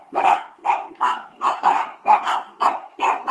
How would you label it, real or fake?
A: fake